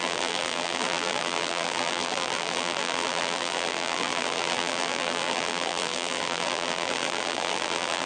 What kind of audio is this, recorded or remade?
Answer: remade